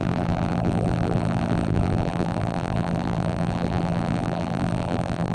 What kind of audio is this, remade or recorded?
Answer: remade